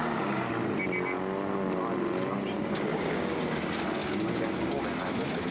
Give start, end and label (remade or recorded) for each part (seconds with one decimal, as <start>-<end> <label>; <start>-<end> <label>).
0.0-0.5 remade; 0.5-2.9 recorded; 2.9-3.4 remade; 3.4-4.0 recorded; 4.0-4.8 remade; 4.8-5.5 recorded